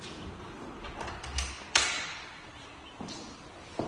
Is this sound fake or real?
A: real